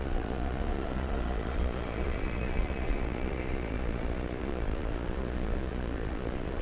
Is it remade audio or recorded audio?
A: remade